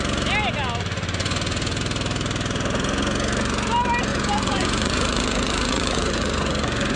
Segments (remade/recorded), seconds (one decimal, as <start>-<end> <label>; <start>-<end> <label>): 0.0-1.2 recorded; 1.2-1.8 remade; 1.8-4.1 recorded; 4.1-7.0 remade